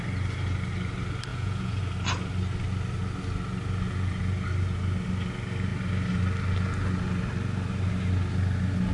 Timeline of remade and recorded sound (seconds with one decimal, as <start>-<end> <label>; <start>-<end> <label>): 0.0-1.3 recorded; 1.3-1.8 remade; 1.8-8.9 recorded